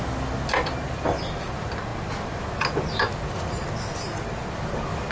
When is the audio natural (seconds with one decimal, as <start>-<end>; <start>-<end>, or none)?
0.0-5.1